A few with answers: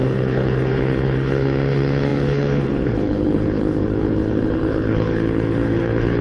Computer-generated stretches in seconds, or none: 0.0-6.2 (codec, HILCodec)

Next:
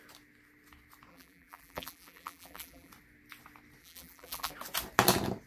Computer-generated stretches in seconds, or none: 1.1-2.9 (vocoder, BigVGAN v2); 3.8-4.5

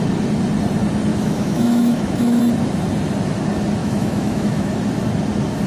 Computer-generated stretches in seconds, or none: 1.1-2.4 (autoencoder, DAC-VAE); 3.8-4.7

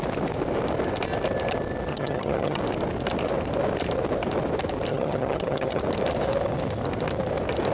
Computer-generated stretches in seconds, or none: 1.9-2.6 (vocoder, HiFi-GAN); 4.9-5.8

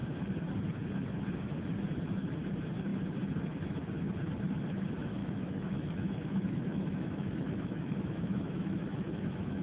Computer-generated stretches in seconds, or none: 5.2-9.6 (autoencoder, DAC-VAE)

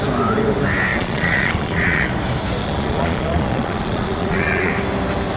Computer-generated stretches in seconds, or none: 0.9-2.1 (vocoder, Vocos); 2.6-4.7

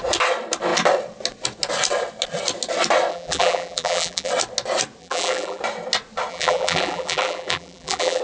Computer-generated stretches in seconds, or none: 3.1-4.3 (vocoder, BigVGAN v2); 5.0-5.6; 6.3-8.2

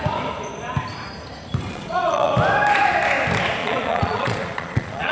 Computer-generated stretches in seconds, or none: 1.7-2.3 (vocoder, Vocos); 3.6-5.1